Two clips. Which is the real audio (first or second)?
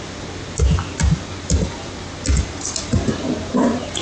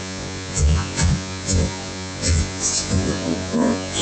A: first